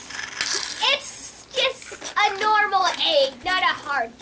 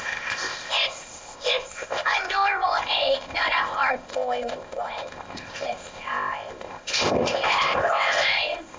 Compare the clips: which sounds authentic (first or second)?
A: first